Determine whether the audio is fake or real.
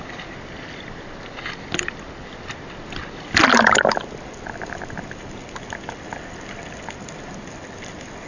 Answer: real